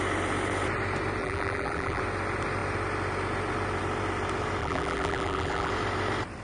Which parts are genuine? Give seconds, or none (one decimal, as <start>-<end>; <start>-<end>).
0.0-1.2; 2.0-4.6; 5.7-6.4